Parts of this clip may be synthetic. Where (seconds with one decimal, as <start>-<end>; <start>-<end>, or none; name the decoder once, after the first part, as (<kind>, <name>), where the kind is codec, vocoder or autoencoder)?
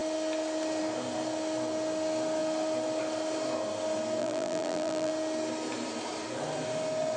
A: 4.2-5.1 (vocoder, BigVGAN v2)